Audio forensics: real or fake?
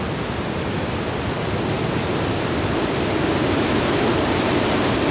real